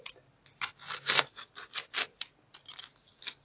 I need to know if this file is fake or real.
real